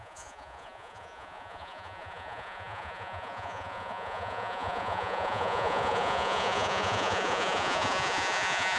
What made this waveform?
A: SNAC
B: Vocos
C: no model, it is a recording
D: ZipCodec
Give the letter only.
B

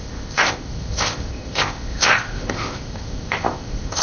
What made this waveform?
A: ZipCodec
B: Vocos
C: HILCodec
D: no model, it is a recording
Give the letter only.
A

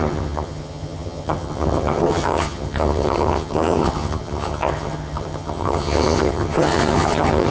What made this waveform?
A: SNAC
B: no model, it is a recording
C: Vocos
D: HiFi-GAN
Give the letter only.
D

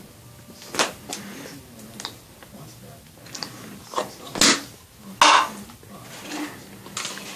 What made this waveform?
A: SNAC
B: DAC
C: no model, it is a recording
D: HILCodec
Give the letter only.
C